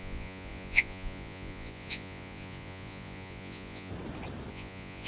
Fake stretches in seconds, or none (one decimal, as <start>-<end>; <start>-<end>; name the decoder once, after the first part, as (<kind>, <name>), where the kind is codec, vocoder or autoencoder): 0.0-3.9 (vocoder, Vocos); 4.5-5.1